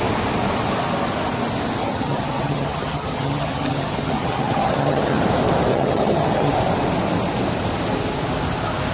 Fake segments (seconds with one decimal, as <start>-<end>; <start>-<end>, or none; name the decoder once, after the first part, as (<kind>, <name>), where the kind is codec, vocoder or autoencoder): 1.8-5.2 (vocoder, HiFi-GAN); 5.7-6.5